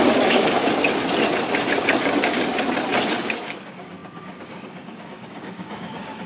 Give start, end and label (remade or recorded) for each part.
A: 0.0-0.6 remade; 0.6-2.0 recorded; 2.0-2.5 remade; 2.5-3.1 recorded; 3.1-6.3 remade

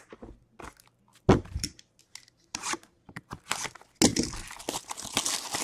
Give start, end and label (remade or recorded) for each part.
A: 0.0-1.1 recorded; 1.1-2.0 remade; 2.0-2.5 recorded; 2.5-3.4 remade; 3.4-5.6 recorded

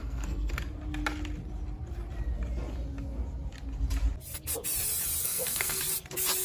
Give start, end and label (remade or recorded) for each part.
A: 0.0-0.6 remade; 0.6-5.2 recorded; 5.2-5.8 remade; 5.8-6.4 recorded